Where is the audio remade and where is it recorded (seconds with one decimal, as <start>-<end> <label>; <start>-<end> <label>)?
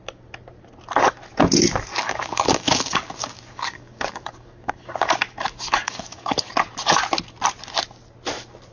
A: 0.0-1.9 recorded; 1.9-6.5 remade; 6.5-8.7 recorded